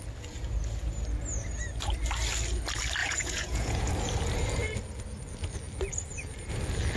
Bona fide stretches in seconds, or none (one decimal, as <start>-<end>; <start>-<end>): 0.0-3.0; 3.9-7.0